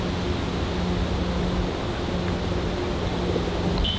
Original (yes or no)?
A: yes